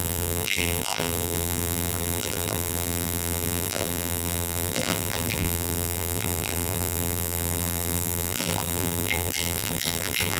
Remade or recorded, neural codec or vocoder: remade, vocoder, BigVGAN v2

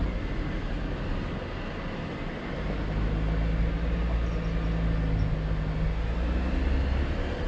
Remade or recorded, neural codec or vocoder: recorded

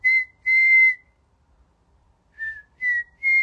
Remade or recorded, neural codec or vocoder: recorded